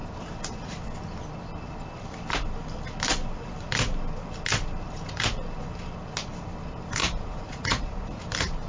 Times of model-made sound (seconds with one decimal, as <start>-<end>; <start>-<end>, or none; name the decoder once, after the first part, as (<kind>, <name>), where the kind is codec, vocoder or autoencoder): 7.0-8.2 (vocoder, Vocos)